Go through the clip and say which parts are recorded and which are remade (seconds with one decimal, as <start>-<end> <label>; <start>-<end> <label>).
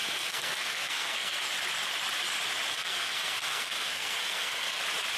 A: 0.0-1.5 remade; 1.5-2.7 recorded; 2.7-4.8 remade; 4.8-5.2 recorded